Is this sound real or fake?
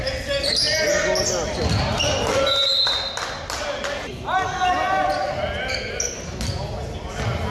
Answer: real